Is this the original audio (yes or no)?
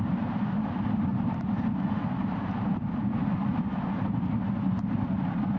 no